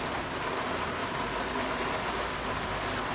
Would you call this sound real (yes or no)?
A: yes